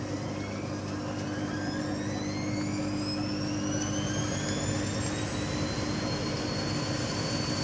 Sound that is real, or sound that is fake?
real